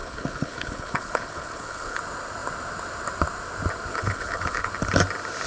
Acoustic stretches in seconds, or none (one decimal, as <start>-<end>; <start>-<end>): 2.0-3.9; 4.7-5.5